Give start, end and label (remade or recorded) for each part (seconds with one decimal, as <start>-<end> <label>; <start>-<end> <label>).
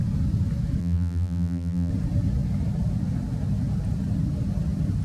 0.0-0.8 recorded; 0.8-1.9 remade; 1.9-5.0 recorded